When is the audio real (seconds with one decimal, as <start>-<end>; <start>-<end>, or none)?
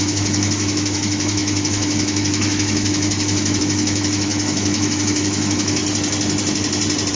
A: 5.8-7.1